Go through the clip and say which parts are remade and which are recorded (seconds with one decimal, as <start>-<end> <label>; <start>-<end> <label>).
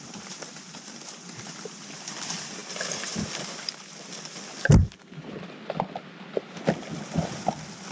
0.0-7.9 recorded